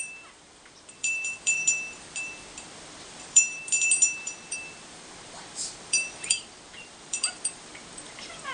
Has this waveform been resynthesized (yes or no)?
yes